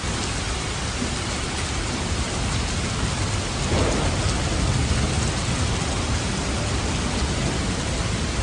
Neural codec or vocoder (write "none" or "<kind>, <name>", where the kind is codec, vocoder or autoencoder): none